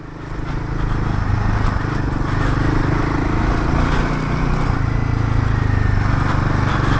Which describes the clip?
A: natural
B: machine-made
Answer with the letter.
A